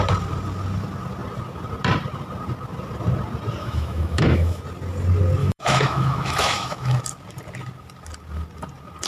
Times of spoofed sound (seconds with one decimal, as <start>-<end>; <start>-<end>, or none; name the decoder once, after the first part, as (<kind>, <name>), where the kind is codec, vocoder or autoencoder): 3.6-4.6 (autoencoder, DAC-VAE); 5.4-7.0